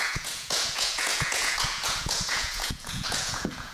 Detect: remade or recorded remade